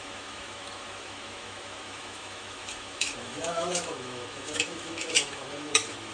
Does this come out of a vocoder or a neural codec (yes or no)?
yes